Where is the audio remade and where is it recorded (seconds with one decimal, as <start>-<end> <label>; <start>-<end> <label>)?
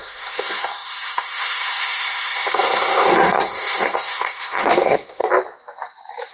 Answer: 0.0-5.2 remade; 5.2-6.3 recorded